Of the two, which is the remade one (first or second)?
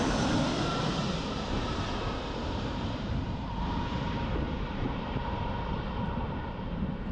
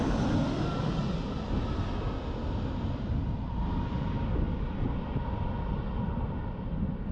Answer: first